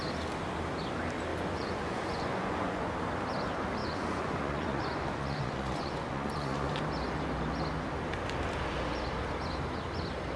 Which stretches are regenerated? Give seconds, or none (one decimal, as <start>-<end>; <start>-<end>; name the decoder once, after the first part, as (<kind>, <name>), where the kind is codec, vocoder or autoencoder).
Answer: 1.3-2.9 (vocoder, Vocos); 3.8-6.8